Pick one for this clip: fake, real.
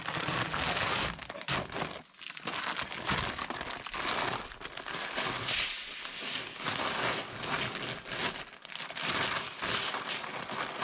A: real